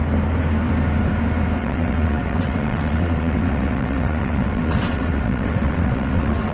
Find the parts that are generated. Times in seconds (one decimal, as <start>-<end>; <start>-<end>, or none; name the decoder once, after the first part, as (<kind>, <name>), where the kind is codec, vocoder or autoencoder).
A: 1.6-6.5 (vocoder, WaveNeXt)